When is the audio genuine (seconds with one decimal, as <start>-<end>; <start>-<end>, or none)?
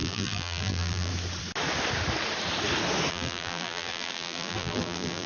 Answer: 1.1-3.1